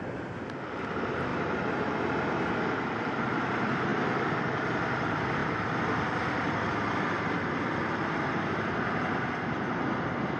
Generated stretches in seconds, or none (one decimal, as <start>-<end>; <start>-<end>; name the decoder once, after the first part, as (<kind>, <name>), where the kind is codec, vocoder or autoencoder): 0.0-1.3 (vocoder, BigVGAN v2); 2.6-10.4